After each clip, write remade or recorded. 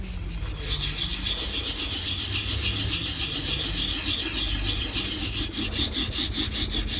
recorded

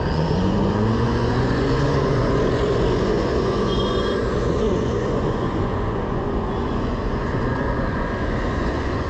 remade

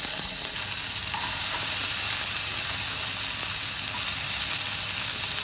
recorded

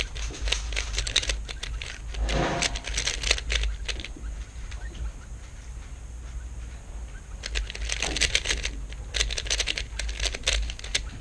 recorded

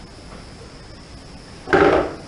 recorded